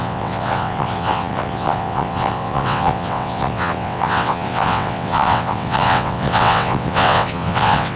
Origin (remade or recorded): remade